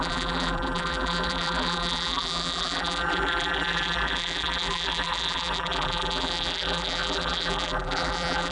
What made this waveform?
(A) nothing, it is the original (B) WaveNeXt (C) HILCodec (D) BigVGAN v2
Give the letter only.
D